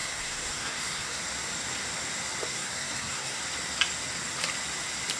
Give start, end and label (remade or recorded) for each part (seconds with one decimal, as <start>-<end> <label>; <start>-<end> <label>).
0.0-1.2 remade; 1.2-2.5 recorded; 2.5-3.4 remade; 3.4-5.2 recorded